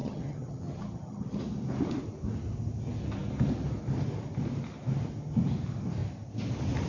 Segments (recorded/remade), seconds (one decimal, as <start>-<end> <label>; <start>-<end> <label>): 0.0-1.4 remade; 1.4-6.9 recorded